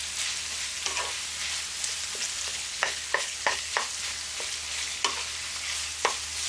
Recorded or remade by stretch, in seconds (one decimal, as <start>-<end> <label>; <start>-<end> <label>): 0.0-2.5 recorded; 2.5-3.7 remade; 3.7-6.5 recorded